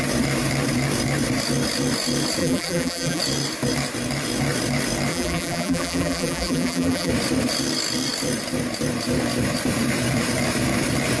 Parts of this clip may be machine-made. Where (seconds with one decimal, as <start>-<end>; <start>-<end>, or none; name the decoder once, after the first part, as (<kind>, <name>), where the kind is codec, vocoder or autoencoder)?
2.4-3.2 (vocoder, BigVGAN v2); 5.1-7.1